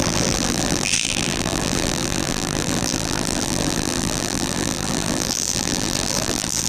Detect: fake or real fake